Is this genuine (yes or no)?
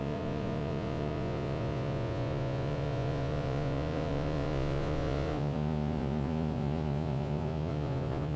no